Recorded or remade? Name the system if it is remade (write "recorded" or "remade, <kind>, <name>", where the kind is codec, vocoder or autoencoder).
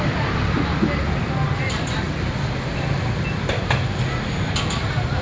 recorded